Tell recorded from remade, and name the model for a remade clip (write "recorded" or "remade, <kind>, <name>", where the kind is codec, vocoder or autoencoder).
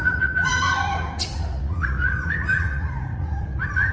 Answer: remade, vocoder, Vocos